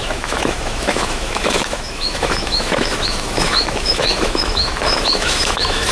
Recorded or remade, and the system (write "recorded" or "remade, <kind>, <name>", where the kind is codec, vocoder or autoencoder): remade, autoencoder, DAC-VAE